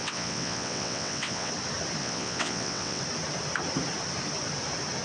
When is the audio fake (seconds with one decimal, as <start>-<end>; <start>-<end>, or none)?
0.0-1.5; 2.0-3.0